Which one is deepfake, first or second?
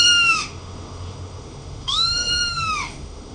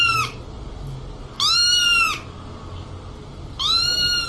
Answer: first